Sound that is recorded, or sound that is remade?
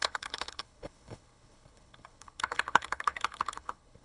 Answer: remade